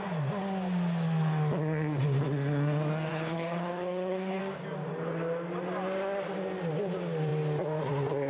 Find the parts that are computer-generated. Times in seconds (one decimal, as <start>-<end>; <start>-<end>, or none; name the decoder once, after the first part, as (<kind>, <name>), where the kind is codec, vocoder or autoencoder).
3.1-4.4 (codec, HILCodec)